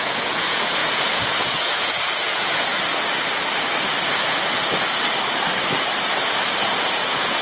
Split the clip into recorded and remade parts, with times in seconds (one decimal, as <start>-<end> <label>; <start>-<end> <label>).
0.0-2.7 remade; 2.7-6.6 recorded; 6.6-7.4 remade